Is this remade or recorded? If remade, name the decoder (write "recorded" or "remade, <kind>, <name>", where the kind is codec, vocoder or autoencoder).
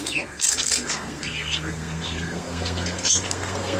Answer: remade, codec, SNAC